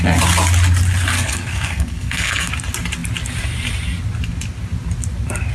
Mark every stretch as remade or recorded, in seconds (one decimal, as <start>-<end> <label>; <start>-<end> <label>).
0.0-1.1 recorded; 1.1-2.5 remade; 2.5-5.5 recorded